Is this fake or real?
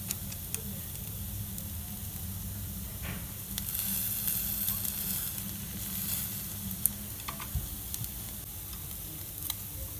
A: real